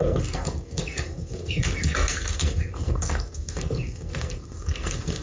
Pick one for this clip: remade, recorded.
remade